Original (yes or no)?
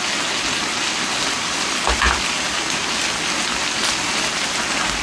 yes